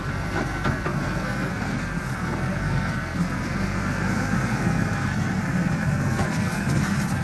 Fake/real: fake